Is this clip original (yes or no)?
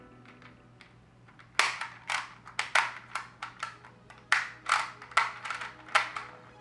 yes